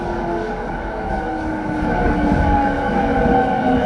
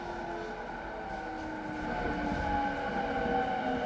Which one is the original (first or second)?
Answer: second